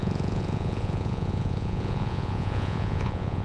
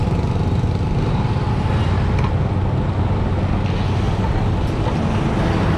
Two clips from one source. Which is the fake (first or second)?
first